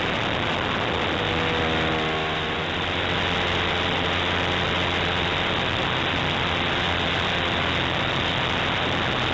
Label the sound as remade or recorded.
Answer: recorded